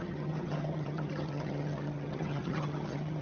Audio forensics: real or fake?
fake